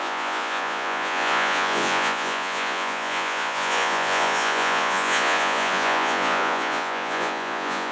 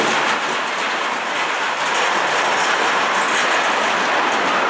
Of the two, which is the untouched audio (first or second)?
second